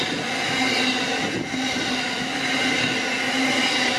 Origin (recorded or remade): recorded